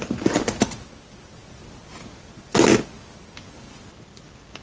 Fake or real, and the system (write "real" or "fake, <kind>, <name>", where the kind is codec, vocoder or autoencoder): real